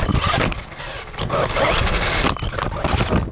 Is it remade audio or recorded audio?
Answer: recorded